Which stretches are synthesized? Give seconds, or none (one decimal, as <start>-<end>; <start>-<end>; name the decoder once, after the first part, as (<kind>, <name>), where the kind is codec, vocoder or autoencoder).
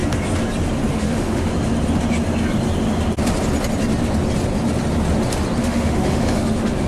0.9-1.5 (autoencoder, DAC-VAE); 5.6-6.9